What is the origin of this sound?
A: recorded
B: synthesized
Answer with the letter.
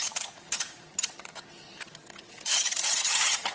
B